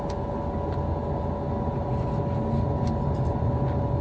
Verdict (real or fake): real